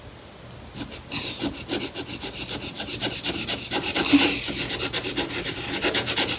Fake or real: real